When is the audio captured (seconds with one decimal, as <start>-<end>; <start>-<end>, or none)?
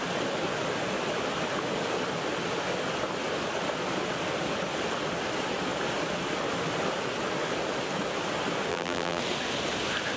0.0-8.7; 9.2-10.2